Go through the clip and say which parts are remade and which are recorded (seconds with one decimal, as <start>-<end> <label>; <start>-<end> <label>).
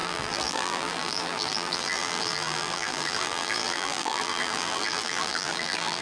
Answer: 0.0-6.0 remade